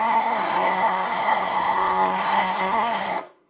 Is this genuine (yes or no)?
no